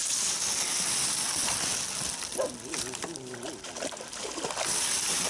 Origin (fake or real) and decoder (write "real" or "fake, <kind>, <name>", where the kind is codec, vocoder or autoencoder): real